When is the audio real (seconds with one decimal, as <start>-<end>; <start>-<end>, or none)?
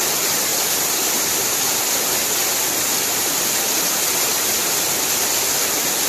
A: 0.0-4.3; 4.9-6.1